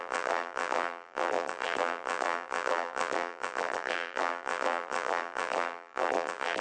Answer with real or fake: fake